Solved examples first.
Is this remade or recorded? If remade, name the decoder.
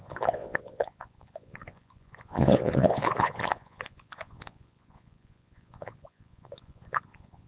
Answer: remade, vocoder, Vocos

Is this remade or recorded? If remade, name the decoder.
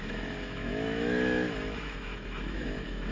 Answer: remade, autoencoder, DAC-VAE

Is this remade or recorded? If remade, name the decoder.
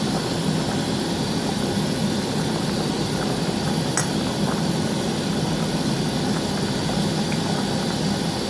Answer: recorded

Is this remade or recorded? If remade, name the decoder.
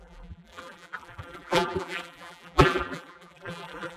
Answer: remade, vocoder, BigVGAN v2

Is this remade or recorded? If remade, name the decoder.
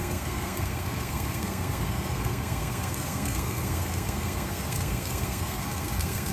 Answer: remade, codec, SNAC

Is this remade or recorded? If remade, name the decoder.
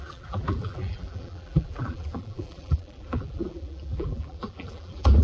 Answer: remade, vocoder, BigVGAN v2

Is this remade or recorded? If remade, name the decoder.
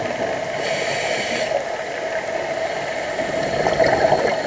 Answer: recorded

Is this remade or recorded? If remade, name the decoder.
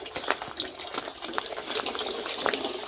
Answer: recorded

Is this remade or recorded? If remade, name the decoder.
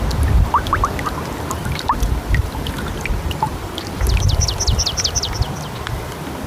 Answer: remade, vocoder, BigVGAN v2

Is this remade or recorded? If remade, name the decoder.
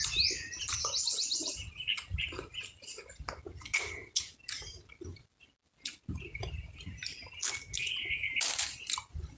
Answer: recorded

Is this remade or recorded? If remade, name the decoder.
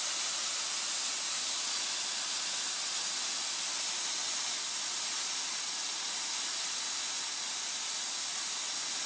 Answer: recorded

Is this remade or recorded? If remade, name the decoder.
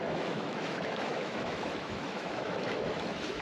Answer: remade, autoencoder, DAC-VAE